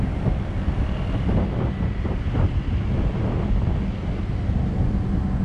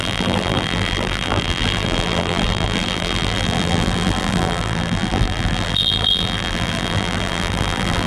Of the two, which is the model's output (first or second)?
second